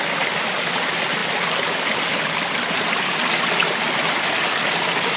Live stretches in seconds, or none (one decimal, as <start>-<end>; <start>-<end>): 0.0-5.2